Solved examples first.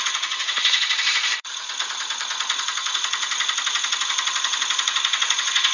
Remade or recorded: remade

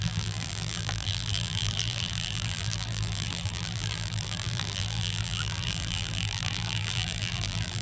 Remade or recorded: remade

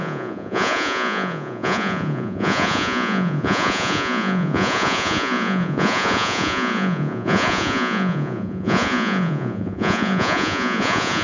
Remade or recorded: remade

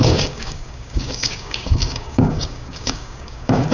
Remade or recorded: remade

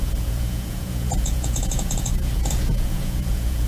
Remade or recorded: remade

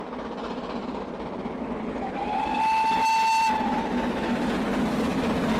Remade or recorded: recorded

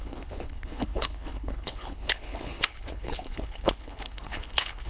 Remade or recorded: remade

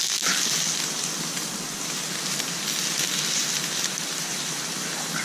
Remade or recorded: recorded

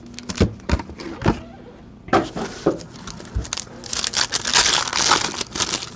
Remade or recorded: recorded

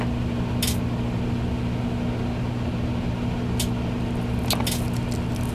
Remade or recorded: recorded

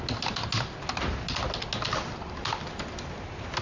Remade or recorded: recorded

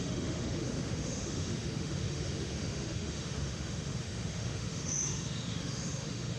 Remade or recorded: remade